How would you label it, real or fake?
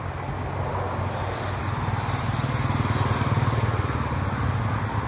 real